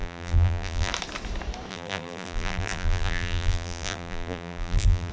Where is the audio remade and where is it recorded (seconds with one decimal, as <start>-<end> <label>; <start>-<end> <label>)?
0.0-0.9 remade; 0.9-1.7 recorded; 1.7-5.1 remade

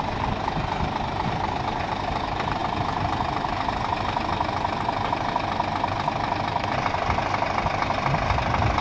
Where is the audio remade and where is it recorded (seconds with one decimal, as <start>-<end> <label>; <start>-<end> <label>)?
0.0-8.8 recorded

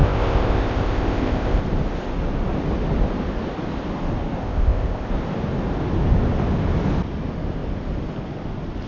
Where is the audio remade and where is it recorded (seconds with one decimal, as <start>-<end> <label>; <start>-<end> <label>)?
0.0-1.6 remade; 1.6-4.4 recorded; 4.4-5.1 remade; 5.1-8.9 recorded

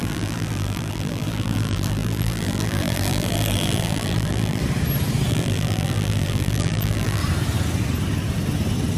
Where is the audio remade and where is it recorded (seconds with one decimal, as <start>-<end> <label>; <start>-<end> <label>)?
0.0-4.6 remade; 4.6-5.3 recorded; 5.3-7.2 remade; 7.2-9.0 recorded

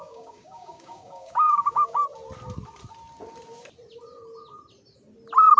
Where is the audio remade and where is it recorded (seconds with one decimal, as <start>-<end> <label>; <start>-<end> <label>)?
0.0-2.0 remade; 2.0-5.6 recorded